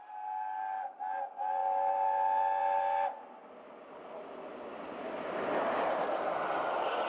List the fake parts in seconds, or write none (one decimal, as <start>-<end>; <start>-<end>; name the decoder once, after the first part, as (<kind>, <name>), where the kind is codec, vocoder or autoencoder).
none